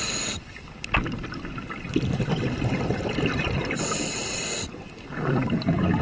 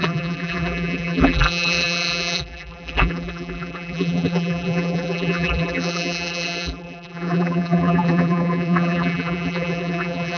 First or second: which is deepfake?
second